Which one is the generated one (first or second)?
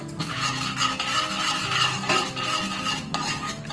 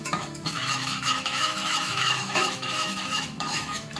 second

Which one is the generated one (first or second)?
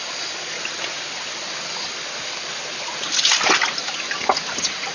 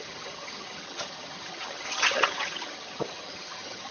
second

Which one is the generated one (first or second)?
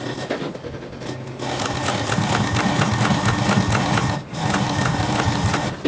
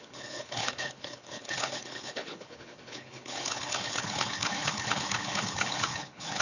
second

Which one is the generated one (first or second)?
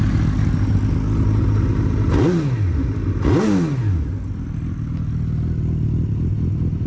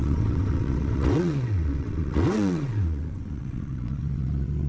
second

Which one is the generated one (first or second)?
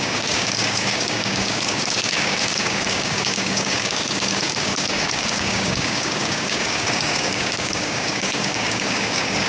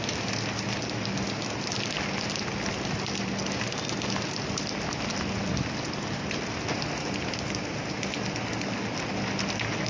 first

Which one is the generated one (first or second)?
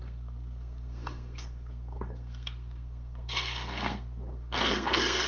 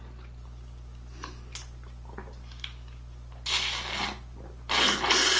first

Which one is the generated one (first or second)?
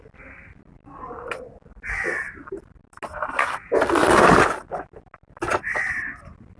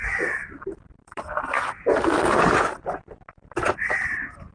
second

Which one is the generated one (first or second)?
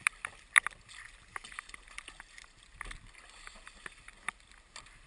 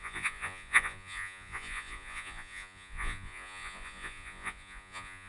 second